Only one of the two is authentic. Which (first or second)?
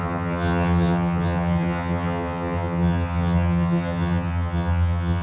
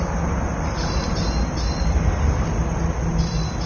second